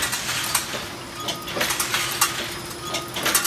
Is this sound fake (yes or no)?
no